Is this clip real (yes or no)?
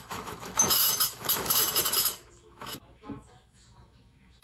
no